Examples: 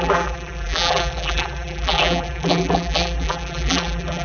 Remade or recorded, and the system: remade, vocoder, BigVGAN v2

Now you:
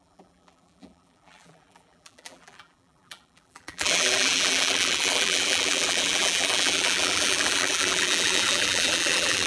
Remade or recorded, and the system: remade, vocoder, BigVGAN v2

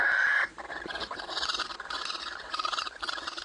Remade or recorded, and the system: remade, vocoder, BigVGAN v2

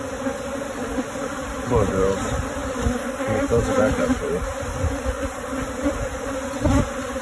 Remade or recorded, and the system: remade, vocoder, BigVGAN v2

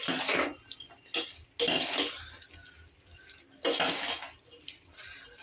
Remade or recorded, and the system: recorded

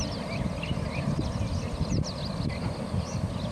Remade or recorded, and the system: recorded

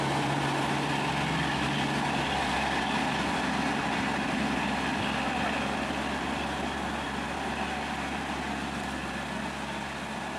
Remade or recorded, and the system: recorded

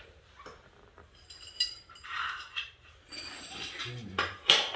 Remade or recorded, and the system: remade, vocoder, BigVGAN v2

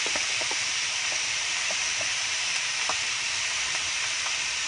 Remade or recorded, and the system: remade, vocoder, BigVGAN v2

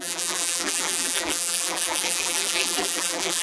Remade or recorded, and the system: remade, vocoder, BigVGAN v2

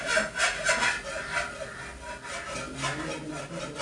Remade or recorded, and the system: recorded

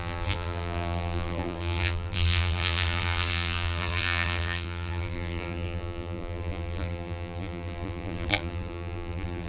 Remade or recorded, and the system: remade, vocoder, BigVGAN v2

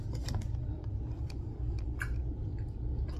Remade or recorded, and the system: remade, vocoder, BigVGAN v2